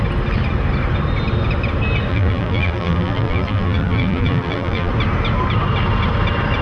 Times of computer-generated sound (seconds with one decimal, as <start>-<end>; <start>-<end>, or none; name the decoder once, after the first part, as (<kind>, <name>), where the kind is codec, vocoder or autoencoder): 2.1-4.9 (vocoder, BigVGAN v2)